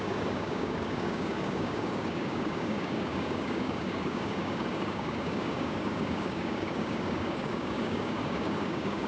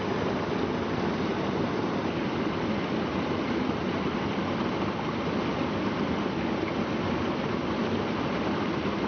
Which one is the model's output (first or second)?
first